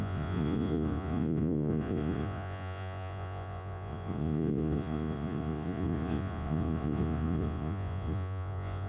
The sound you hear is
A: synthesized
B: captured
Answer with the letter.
A